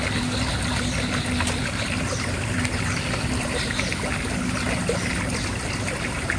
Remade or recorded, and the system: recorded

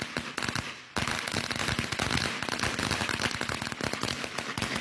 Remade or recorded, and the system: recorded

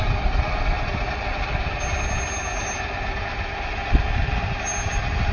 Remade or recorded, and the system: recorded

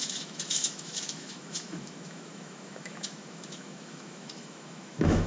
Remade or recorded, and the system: remade, autoencoder, DAC-VAE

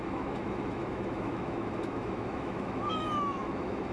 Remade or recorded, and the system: remade, autoencoder, DAC-VAE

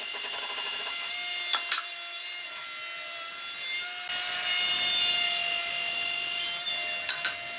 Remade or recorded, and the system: recorded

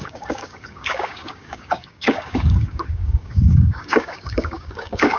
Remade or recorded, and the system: remade, codec, DAC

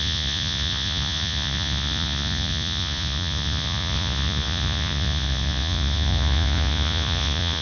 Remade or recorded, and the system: remade, vocoder, Vocos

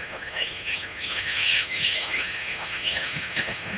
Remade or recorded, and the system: remade, autoencoder, DAC-VAE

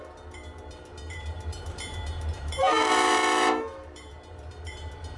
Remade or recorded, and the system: remade, vocoder, BigVGAN v2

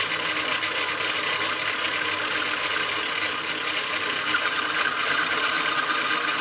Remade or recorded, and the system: recorded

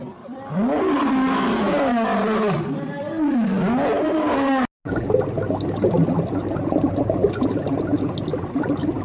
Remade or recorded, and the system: recorded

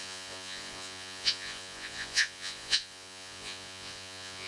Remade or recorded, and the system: remade, vocoder, Vocos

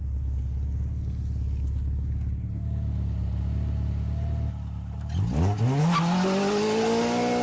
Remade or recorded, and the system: recorded